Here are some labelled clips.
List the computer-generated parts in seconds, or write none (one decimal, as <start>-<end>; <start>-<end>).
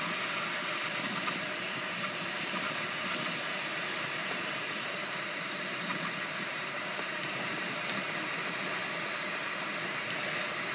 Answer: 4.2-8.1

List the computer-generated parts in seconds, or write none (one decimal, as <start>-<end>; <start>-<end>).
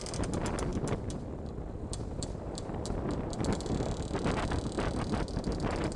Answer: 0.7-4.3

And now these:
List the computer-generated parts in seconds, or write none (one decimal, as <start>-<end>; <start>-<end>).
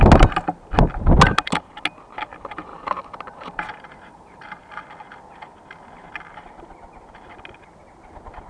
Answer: 2.7-4.6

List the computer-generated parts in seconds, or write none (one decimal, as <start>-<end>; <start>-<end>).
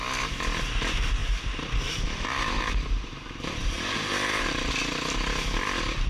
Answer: 1.2-4.7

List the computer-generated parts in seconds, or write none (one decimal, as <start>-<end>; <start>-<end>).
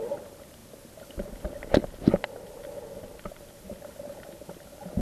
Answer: none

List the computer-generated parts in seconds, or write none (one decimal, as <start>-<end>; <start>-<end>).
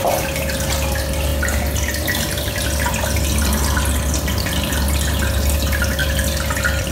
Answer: none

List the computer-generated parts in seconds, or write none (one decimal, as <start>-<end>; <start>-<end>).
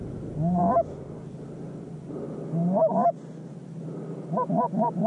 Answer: none